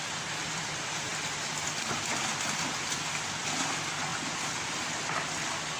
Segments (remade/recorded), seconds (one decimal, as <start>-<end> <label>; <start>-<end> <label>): 0.0-4.1 recorded; 4.1-5.3 remade; 5.3-5.8 recorded